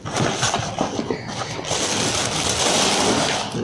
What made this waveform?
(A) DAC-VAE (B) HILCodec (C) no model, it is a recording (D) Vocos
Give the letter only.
C